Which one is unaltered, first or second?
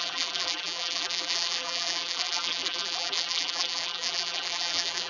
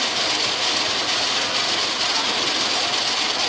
second